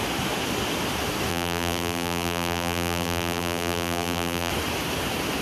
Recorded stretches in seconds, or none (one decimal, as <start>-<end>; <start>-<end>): 0.0-1.3; 4.5-5.4